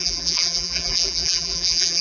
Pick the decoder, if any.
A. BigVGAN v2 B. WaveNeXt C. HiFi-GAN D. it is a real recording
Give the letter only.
A